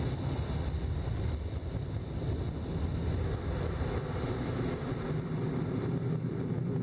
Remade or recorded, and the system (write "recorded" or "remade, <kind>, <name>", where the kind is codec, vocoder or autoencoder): recorded